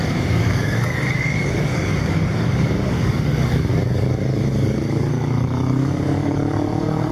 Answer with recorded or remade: remade